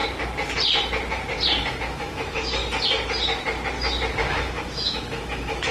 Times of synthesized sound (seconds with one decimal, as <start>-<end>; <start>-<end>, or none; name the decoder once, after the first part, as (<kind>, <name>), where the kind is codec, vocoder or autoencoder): 1.7-2.6 (autoencoder, DAC-VAE); 4.1-5.7